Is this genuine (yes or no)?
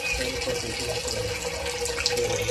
yes